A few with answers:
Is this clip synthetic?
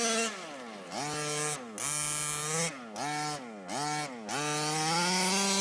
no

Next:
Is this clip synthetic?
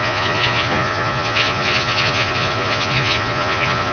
yes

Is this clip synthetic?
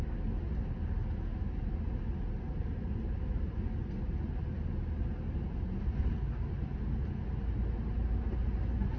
no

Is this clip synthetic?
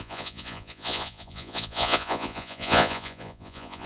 yes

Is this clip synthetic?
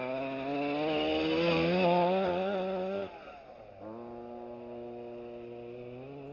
no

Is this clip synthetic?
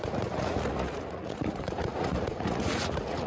yes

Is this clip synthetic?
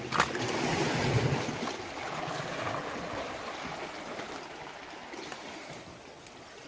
no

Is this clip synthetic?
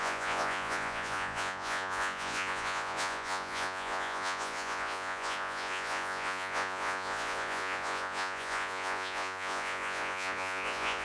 yes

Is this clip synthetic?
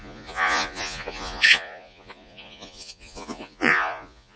yes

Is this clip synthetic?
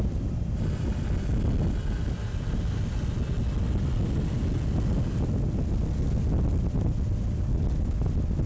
no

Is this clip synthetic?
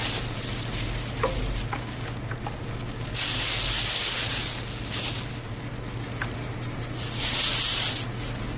no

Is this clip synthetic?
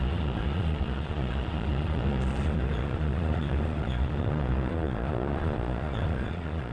yes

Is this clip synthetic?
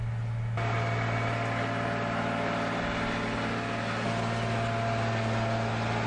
no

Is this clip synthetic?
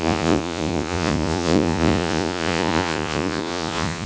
yes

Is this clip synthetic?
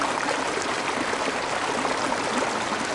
no